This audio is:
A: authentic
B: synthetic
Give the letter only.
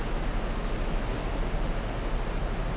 A